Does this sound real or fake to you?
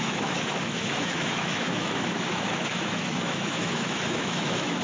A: fake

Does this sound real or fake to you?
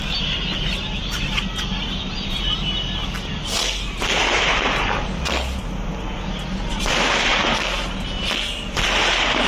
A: real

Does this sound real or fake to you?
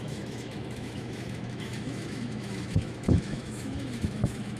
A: fake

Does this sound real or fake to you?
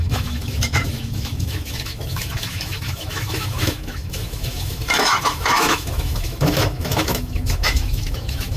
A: fake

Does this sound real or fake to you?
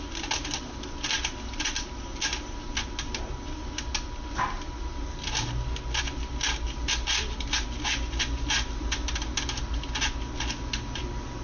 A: real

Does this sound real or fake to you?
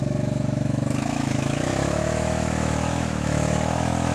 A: fake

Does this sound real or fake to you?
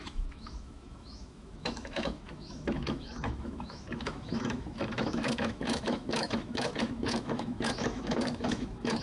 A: fake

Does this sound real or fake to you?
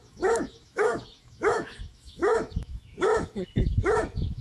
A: fake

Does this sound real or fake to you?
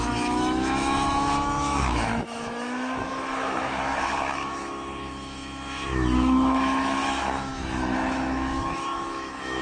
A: fake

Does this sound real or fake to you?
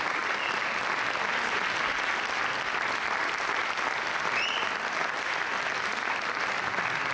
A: real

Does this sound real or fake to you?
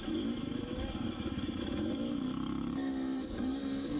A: fake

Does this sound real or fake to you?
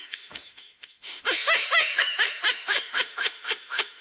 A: fake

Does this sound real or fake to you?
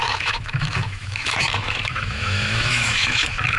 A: fake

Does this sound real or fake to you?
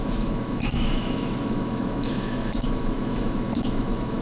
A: fake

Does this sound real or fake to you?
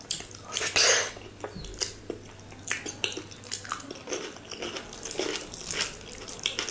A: real